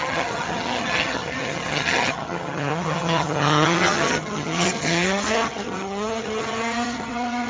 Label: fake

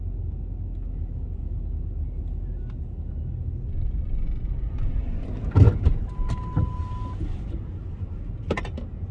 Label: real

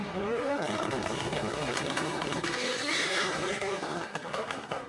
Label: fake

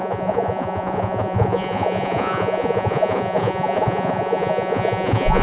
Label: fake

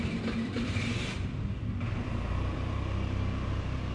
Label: fake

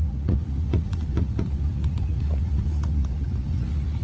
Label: fake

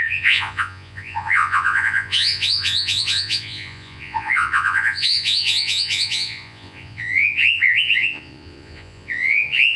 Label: fake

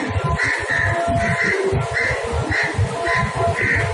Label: real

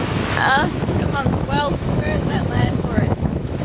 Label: fake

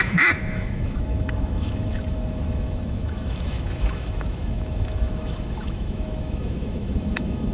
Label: fake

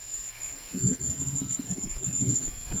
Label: fake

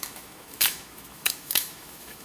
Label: fake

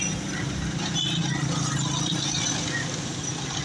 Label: real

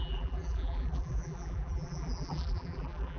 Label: fake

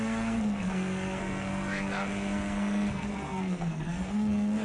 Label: fake